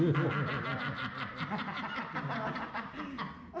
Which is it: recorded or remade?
recorded